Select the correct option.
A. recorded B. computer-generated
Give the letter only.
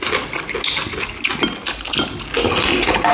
A